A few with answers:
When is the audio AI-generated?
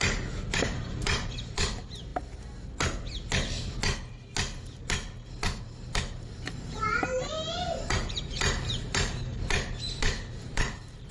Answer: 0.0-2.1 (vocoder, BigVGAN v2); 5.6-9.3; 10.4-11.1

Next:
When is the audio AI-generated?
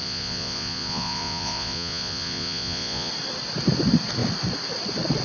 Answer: 0.0-3.1 (vocoder, Vocos)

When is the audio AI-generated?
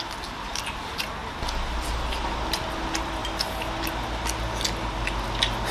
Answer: none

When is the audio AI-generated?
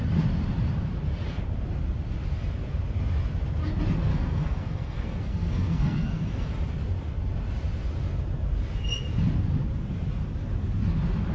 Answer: 4.1-6.5 (codec, SNAC)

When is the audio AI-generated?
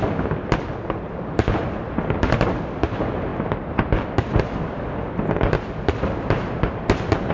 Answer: none